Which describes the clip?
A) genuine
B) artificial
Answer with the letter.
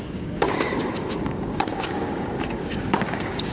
B